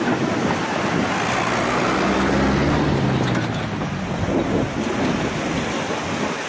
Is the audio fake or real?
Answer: real